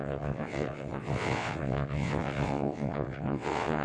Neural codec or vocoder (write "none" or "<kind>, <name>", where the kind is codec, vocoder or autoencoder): vocoder, WaveNeXt